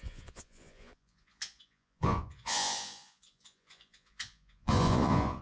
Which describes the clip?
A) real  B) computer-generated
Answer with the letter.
B